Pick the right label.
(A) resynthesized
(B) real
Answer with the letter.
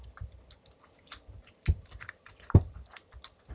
B